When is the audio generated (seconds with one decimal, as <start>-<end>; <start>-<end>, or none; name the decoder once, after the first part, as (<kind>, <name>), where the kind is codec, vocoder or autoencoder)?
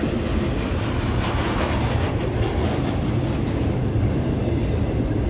none